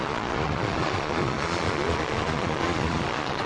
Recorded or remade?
remade